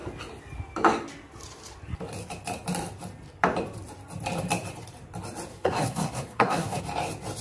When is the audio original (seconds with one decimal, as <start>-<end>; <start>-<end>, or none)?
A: 0.0-5.5; 6.8-7.4